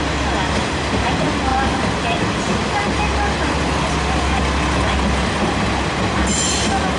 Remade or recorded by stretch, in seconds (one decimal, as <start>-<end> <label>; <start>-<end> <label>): 0.0-7.0 recorded

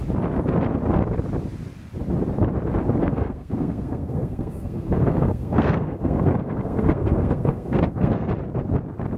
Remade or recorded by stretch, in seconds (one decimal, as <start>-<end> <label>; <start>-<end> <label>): 0.0-3.0 recorded; 3.0-8.3 remade; 8.3-9.2 recorded

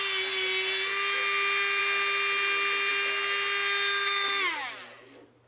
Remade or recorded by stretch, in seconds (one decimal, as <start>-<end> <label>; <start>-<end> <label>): 0.0-5.5 recorded

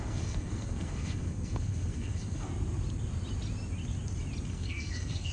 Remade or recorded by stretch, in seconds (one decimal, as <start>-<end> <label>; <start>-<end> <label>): 0.0-2.5 remade; 2.5-4.5 recorded; 4.5-5.3 remade

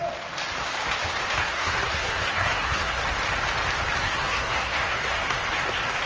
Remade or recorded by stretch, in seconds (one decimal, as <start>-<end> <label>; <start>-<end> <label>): 0.0-1.4 recorded; 1.4-3.0 remade; 3.0-4.0 recorded; 4.0-5.4 remade; 5.4-6.1 recorded

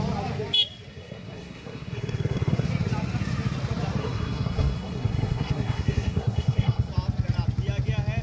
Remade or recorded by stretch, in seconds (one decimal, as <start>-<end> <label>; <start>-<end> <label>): 0.0-0.9 recorded; 0.9-2.7 remade; 2.7-4.0 recorded; 4.0-6.9 remade; 6.9-8.2 recorded

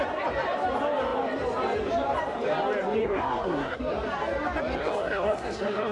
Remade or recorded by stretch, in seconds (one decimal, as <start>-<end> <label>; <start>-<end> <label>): 0.0-3.0 recorded; 3.0-3.8 remade; 3.8-4.8 recorded; 4.8-5.9 remade

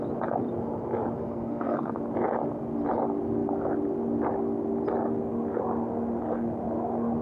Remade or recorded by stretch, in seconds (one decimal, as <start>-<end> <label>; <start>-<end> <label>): 0.0-1.2 recorded; 1.2-2.0 remade; 2.0-7.2 recorded